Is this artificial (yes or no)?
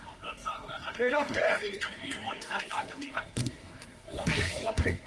yes